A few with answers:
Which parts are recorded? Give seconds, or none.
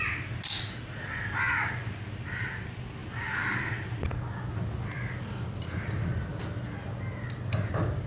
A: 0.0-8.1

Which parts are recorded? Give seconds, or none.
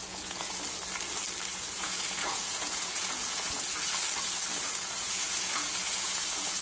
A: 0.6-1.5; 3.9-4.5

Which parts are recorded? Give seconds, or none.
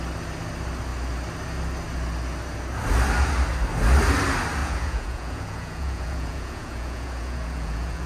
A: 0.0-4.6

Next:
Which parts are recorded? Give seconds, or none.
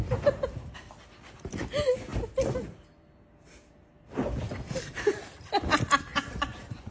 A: 0.0-6.1